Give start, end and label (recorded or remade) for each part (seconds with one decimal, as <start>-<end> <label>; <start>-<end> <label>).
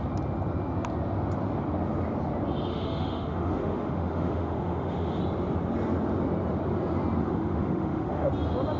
0.0-2.7 recorded; 2.7-5.2 remade; 5.2-7.2 recorded; 7.2-8.3 remade; 8.3-8.8 recorded